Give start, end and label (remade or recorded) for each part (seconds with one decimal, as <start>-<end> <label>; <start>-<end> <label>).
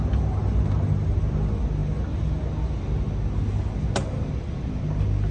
0.0-5.3 recorded